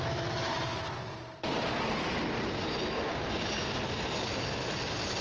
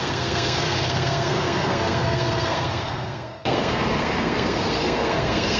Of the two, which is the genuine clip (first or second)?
first